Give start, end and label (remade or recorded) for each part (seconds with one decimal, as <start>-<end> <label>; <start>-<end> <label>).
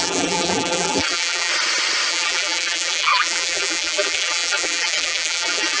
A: 0.0-1.5 remade; 1.5-2.1 recorded; 2.1-5.8 remade